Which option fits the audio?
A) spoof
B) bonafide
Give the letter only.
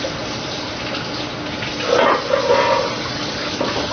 B